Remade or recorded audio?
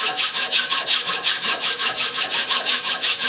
remade